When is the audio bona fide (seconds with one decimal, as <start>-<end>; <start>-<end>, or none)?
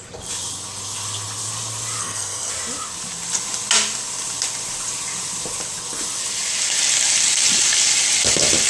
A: 0.0-2.0; 2.5-8.7